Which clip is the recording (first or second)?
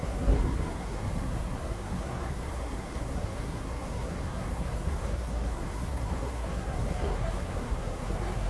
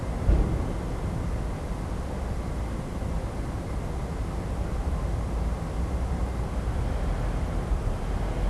second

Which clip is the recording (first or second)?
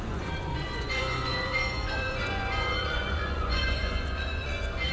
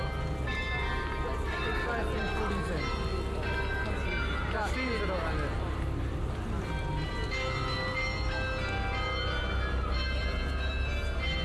second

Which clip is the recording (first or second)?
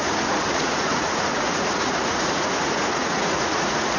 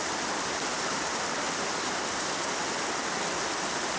second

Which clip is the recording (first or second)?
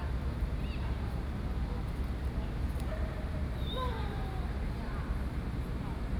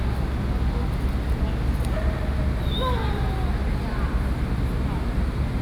second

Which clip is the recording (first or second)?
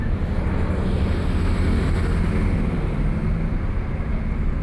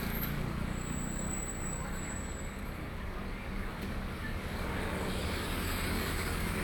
first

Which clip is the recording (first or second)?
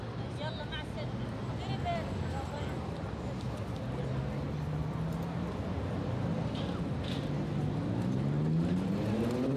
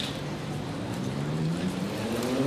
first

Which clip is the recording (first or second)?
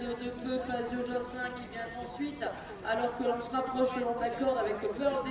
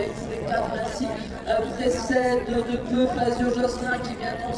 first